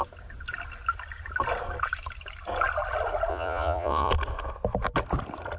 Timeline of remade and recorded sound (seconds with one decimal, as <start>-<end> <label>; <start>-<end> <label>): 0.0-3.3 recorded; 3.3-4.1 remade; 4.1-5.6 recorded